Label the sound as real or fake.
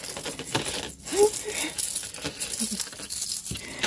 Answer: real